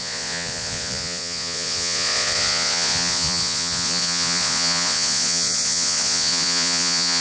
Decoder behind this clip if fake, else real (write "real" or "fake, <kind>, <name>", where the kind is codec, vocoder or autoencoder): fake, vocoder, Vocos